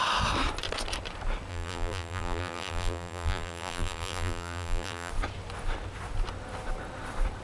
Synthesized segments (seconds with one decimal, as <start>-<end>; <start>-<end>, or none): 1.5-5.1